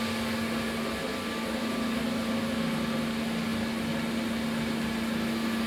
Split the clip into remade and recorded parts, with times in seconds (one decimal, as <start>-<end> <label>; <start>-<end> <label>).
0.0-5.7 recorded